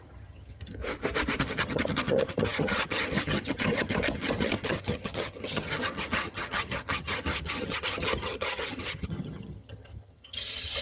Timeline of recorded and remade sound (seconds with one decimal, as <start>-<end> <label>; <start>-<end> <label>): 0.0-0.8 remade; 0.8-1.4 recorded; 1.4-10.8 remade